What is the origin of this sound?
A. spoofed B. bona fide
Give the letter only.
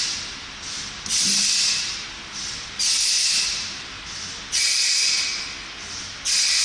B